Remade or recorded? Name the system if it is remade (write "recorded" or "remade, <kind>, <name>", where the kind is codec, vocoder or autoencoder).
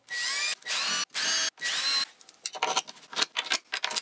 recorded